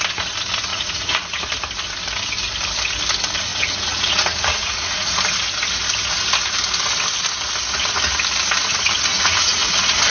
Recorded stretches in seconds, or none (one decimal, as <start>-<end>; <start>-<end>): 0.0-0.7; 1.4-3.5; 5.2-9.1; 9.7-10.1